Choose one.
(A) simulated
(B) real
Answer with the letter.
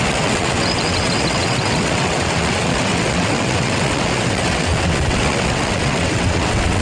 A